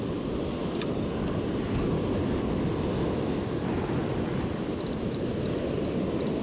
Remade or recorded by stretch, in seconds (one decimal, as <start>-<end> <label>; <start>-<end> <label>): 0.0-6.4 recorded